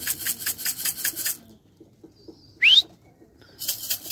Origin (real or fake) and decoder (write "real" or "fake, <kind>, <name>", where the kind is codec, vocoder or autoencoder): real